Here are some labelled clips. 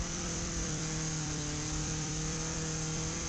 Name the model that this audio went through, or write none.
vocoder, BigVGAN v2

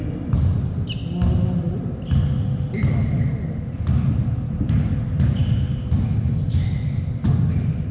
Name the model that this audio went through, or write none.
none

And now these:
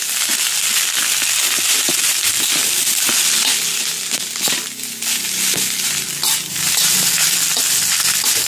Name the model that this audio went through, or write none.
none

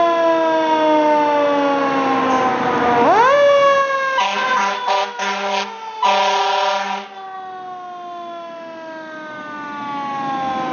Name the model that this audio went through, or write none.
none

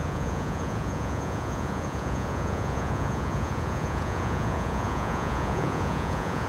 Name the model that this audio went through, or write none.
vocoder, Vocos